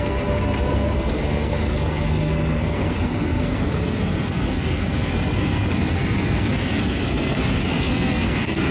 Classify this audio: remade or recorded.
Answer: remade